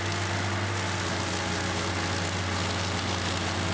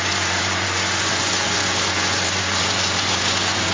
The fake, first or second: second